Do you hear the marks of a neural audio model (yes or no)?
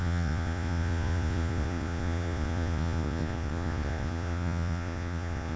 yes